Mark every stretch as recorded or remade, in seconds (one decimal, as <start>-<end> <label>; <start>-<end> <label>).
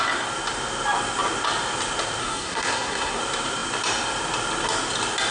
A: 0.0-2.2 recorded; 2.2-3.2 remade; 3.2-5.3 recorded